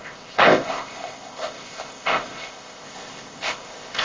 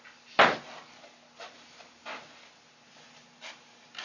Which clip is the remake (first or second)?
first